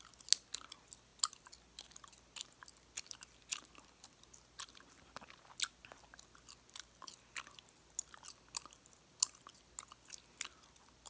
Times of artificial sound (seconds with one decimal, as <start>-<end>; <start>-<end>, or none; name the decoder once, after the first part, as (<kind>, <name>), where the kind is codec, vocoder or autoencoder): none